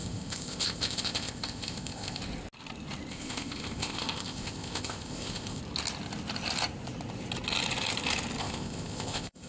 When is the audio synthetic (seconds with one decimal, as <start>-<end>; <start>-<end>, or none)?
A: 0.0-2.2; 3.1-5.6; 8.4-9.5